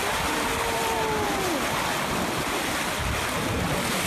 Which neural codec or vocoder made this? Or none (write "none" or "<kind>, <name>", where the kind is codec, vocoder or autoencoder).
none